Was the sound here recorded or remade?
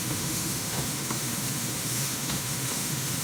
remade